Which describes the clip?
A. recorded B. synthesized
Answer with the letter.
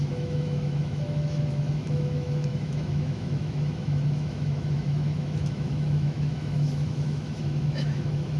B